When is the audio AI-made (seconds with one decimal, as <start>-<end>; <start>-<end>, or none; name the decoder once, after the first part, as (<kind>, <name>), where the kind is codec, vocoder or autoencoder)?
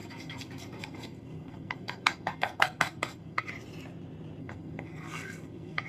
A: 0.0-3.5 (codec, SNAC); 4.4-5.9